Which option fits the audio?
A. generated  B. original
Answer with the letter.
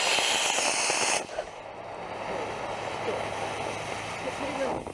B